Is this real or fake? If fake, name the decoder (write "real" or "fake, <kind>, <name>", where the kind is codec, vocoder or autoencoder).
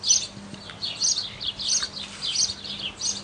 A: real